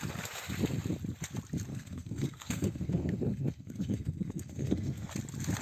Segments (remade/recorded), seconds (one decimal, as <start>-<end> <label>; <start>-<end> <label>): 0.0-1.7 recorded; 1.7-5.1 remade; 5.1-5.6 recorded